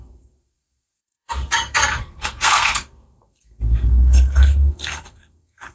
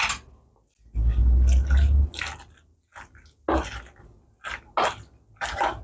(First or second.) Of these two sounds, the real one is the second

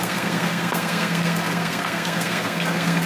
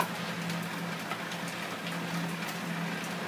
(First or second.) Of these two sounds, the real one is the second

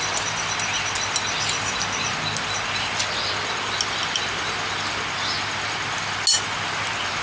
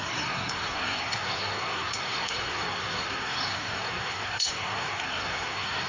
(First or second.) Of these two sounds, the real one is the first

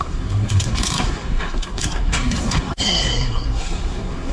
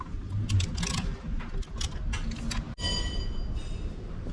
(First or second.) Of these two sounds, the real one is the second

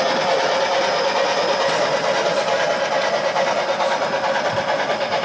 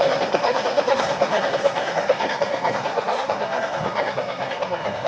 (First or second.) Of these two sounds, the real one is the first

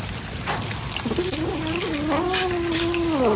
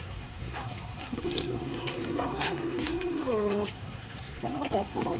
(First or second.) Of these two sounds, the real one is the first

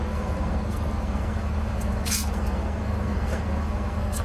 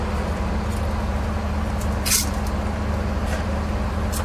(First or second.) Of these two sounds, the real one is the second